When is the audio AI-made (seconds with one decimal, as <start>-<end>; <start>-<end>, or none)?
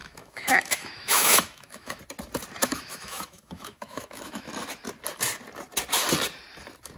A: 0.0-2.0; 2.6-4.5